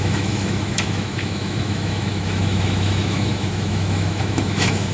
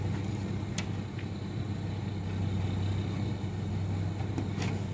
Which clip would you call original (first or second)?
second